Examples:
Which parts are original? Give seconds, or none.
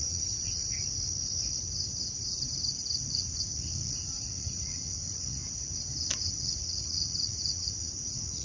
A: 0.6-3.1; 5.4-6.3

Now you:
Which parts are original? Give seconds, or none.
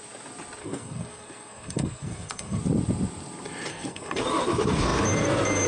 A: 0.0-0.6; 2.6-3.7; 4.2-5.7